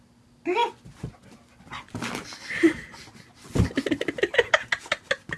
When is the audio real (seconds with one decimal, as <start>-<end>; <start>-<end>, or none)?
0.0-5.4

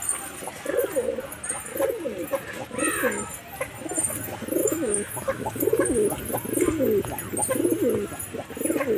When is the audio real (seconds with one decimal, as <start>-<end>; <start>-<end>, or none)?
0.0-4.6; 5.6-9.0